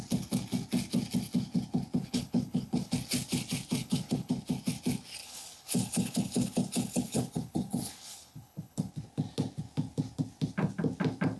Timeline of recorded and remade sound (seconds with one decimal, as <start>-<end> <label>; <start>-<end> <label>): 0.0-2.0 recorded; 2.0-2.9 remade; 2.9-3.8 recorded; 3.8-4.3 remade; 4.3-5.2 recorded; 5.2-8.9 remade; 8.9-11.4 recorded

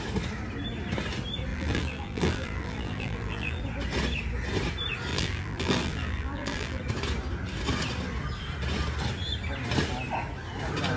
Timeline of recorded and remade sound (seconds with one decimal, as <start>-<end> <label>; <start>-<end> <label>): 0.0-1.5 recorded; 1.5-3.6 remade; 3.6-5.1 recorded; 5.1-6.8 remade; 6.8-11.0 recorded

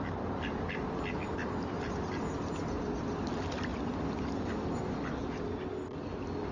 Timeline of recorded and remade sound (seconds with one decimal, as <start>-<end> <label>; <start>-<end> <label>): 0.0-6.5 recorded

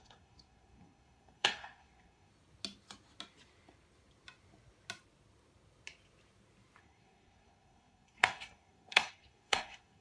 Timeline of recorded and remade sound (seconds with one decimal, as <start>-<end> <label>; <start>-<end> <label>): 0.0-2.3 remade; 2.3-6.8 recorded; 6.8-10.0 remade

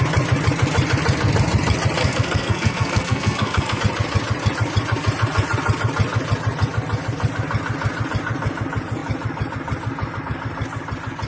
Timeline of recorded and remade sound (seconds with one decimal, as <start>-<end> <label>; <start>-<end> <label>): 0.0-2.0 recorded; 2.0-3.8 remade; 3.8-11.3 recorded